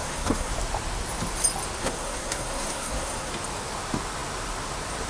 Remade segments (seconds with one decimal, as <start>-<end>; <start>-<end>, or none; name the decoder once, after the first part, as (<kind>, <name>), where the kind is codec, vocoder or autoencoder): 0.0-0.5 (codec, SNAC); 1.8-3.3